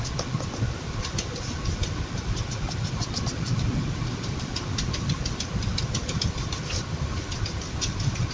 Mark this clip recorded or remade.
recorded